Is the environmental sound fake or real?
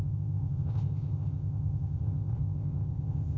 fake